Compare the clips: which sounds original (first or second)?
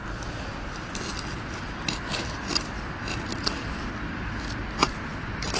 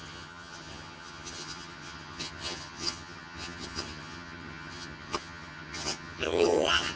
first